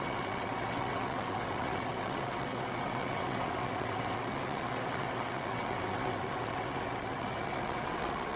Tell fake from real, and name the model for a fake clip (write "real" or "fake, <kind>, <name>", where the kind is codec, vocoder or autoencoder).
fake, vocoder, WaveNeXt